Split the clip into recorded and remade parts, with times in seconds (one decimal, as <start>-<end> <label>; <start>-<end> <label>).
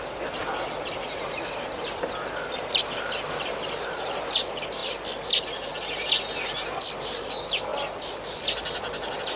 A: 0.0-9.4 recorded